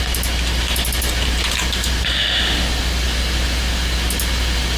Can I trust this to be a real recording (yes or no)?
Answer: yes